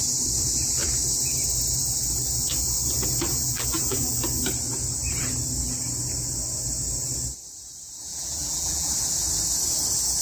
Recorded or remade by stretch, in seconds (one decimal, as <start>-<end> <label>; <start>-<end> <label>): 0.0-3.3 recorded; 3.3-4.1 remade; 4.1-8.1 recorded; 8.1-8.9 remade; 8.9-10.2 recorded